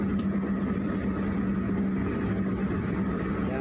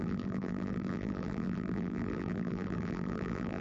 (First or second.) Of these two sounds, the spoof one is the second